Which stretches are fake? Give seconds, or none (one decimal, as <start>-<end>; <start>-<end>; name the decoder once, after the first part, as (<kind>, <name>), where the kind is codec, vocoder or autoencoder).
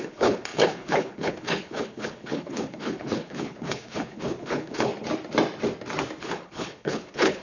0.0-4.9 (codec, HILCodec); 6.2-7.4